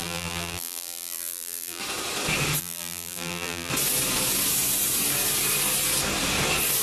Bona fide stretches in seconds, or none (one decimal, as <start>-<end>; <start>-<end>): 1.8-2.6; 3.7-6.8